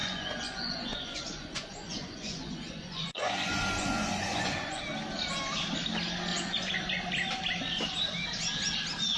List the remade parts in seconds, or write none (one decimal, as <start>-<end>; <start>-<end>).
0.0-4.8; 6.3-6.9